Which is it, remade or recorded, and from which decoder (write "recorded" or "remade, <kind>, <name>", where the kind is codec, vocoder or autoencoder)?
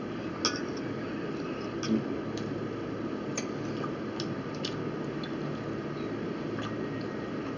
recorded